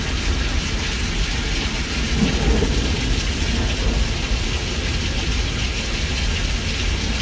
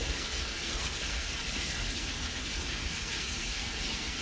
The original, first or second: first